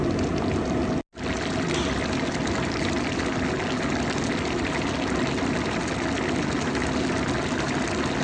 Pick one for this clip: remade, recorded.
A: recorded